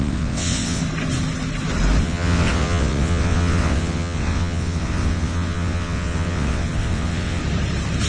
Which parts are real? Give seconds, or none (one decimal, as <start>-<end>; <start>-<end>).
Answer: 0.8-2.0; 7.4-8.1